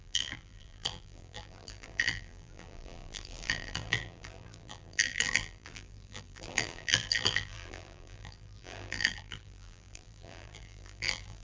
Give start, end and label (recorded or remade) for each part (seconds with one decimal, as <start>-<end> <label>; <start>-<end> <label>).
0.0-11.4 remade